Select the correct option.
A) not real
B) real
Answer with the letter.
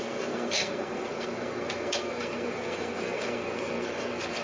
A